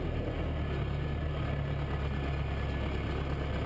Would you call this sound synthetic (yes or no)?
no